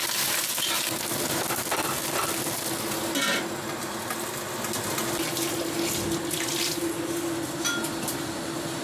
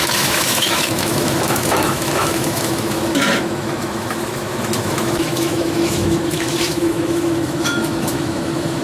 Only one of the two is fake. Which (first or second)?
second